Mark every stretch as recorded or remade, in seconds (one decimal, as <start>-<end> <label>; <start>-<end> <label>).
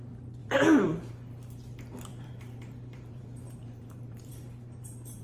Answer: 0.0-0.4 recorded; 0.4-1.1 remade; 1.1-2.1 recorded; 2.1-5.2 remade